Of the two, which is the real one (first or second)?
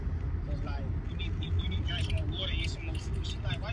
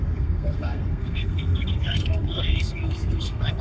first